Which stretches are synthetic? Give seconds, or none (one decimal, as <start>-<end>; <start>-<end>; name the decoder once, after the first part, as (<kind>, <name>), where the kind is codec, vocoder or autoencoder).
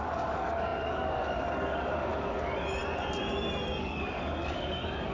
0.0-2.8 (codec, DAC); 3.8-5.1